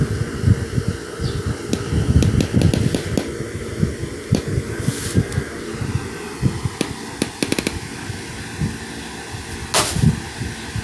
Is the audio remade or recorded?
recorded